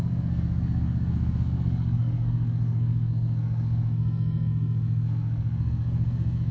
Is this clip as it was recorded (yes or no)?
no